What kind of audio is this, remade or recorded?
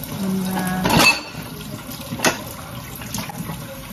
recorded